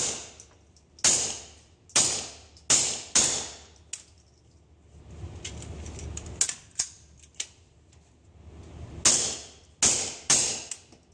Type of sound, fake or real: real